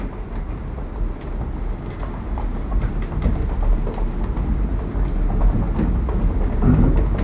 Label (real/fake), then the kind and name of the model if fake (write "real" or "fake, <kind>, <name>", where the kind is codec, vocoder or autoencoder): real